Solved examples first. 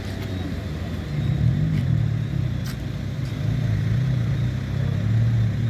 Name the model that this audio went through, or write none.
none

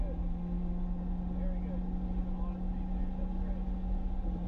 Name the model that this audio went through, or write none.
none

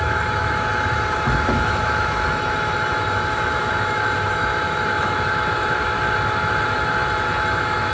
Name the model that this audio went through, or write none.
autoencoder, DAC-VAE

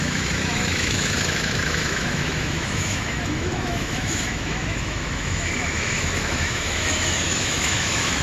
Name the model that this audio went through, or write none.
autoencoder, DAC-VAE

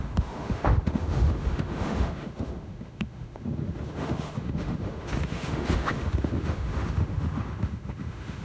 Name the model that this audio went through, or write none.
autoencoder, DAC-VAE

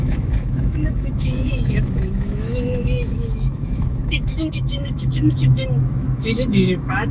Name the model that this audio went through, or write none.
autoencoder, DAC-VAE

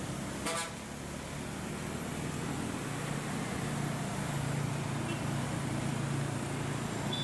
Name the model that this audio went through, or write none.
none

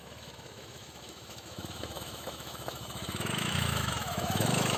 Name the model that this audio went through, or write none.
autoencoder, DAC-VAE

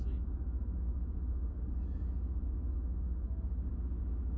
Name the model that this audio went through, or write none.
autoencoder, DAC-VAE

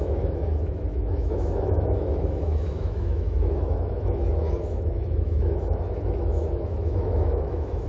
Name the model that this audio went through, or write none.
autoencoder, DAC-VAE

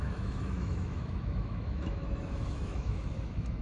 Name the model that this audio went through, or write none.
autoencoder, DAC-VAE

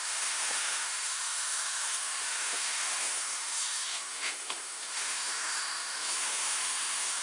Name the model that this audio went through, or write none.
autoencoder, DAC-VAE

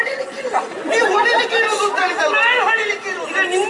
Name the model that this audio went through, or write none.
none